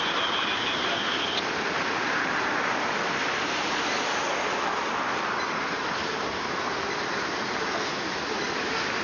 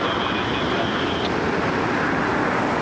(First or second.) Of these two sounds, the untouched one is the second